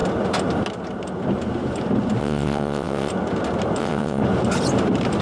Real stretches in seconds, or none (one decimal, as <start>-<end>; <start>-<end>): 0.0-2.2; 3.1-3.8; 4.2-5.2

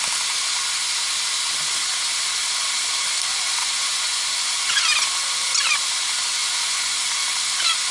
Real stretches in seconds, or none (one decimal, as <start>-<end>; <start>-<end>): 0.0-3.6; 4.8-6.4; 7.0-7.9

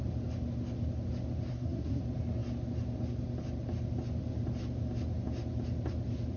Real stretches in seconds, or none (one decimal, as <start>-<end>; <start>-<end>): 0.0-1.5; 2.0-6.4

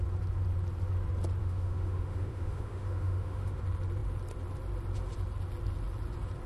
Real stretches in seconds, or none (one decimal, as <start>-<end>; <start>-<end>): 0.0-1.4; 3.6-6.5

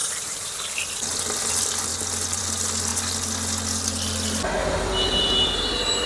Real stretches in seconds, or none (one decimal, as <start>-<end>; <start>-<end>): 0.7-6.1

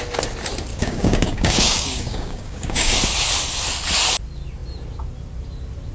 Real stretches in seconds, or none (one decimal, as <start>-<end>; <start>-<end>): 0.0-0.7; 3.0-5.9

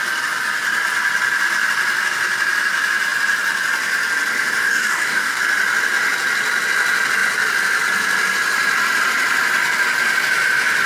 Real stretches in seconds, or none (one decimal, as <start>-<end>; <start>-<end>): 0.0-4.6; 5.4-10.9

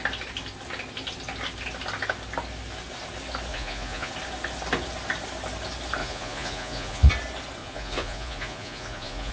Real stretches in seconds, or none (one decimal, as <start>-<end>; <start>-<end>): 0.0-3.5; 4.1-6.0; 7.1-7.6